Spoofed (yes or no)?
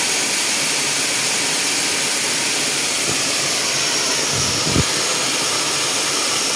no